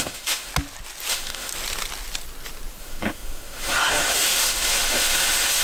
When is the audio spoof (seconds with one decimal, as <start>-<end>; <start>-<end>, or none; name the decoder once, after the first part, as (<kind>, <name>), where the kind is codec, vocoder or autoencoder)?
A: 0.0-0.5 (autoencoder, DAC-VAE); 1.1-1.5; 2.8-5.6